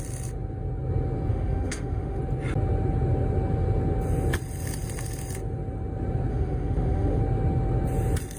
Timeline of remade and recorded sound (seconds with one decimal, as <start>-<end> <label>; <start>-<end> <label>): 0.0-1.3 recorded; 1.3-2.2 remade; 2.2-6.3 recorded; 6.3-7.2 remade; 7.2-8.4 recorded